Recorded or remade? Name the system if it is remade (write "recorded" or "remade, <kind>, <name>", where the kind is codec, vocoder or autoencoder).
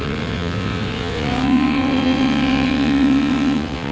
remade, vocoder, WaveNeXt